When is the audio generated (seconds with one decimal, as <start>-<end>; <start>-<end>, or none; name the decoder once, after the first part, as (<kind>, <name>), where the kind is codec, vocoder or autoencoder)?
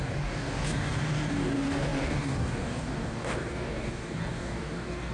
0.0-5.1 (codec, DAC)